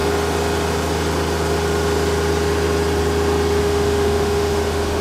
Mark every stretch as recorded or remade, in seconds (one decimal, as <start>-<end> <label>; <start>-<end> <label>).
0.0-3.6 recorded; 3.6-5.0 remade